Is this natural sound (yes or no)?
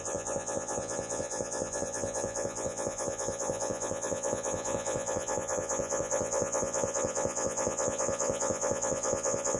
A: no